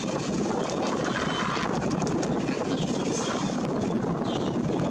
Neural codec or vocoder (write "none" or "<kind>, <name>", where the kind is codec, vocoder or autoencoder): none